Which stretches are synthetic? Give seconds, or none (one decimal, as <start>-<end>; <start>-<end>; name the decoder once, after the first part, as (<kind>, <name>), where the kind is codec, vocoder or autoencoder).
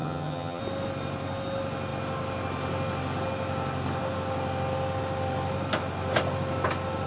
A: 0.0-0.6 (vocoder, HiFi-GAN)